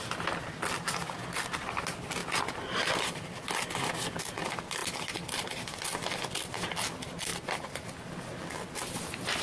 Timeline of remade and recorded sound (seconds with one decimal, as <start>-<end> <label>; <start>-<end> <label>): 0.0-2.2 recorded; 2.2-4.2 remade; 4.2-4.8 recorded; 4.8-6.2 remade; 6.2-9.4 recorded